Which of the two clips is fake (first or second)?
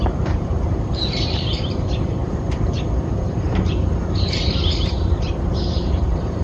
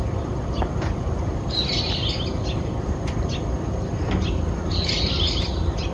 first